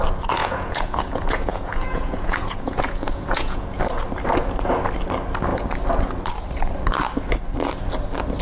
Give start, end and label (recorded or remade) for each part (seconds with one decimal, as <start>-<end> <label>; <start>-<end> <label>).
0.0-0.4 recorded; 0.4-3.8 remade; 3.8-8.4 recorded

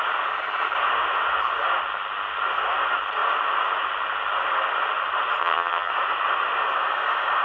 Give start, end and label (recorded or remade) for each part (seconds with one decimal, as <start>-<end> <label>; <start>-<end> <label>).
0.0-5.4 recorded; 5.4-5.9 remade; 5.9-7.4 recorded

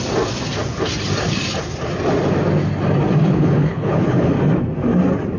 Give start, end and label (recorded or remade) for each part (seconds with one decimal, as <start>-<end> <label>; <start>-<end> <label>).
0.0-3.2 recorded; 3.2-4.3 remade; 4.3-5.4 recorded

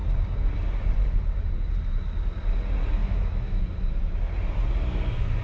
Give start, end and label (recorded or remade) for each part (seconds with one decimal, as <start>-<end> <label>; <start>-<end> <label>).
0.0-3.0 recorded; 3.0-3.6 remade; 3.6-5.4 recorded

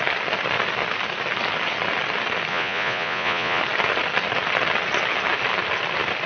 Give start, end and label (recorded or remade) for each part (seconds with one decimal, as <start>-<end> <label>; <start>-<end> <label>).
0.0-2.5 recorded; 2.5-3.6 remade; 3.6-6.3 recorded